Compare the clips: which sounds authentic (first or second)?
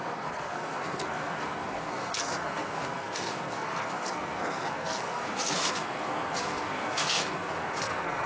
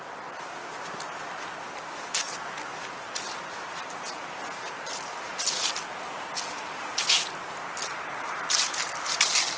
second